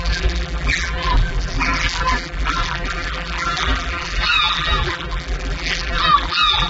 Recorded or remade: remade